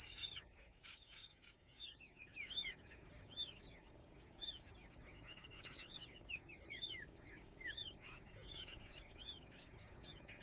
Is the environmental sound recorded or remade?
remade